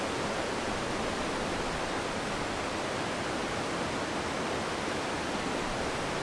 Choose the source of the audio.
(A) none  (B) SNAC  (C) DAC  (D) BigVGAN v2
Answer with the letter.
A